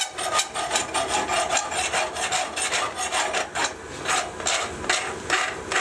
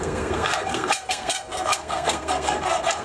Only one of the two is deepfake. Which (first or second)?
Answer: second